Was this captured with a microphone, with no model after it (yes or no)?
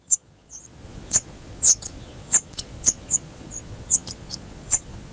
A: no